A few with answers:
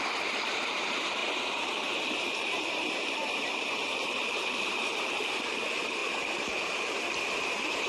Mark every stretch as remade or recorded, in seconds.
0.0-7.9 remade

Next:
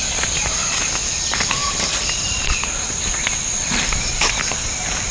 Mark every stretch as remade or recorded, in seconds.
0.0-1.6 recorded; 1.6-5.1 remade